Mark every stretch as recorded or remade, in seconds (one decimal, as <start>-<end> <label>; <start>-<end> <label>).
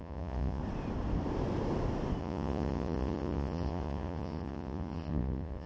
0.0-0.6 remade; 0.6-2.2 recorded; 2.2-5.7 remade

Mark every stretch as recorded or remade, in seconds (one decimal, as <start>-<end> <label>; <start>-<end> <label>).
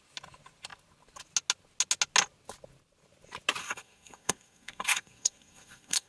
0.0-3.6 recorded; 3.6-6.1 remade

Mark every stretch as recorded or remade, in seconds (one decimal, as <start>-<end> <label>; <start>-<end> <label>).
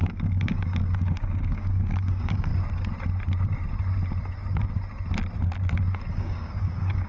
0.0-2.5 remade; 2.5-6.1 recorded; 6.1-7.1 remade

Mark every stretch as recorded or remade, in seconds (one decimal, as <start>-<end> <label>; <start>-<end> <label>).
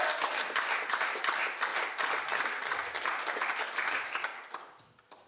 0.0-5.3 recorded